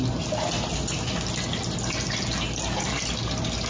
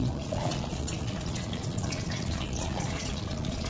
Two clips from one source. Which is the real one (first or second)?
first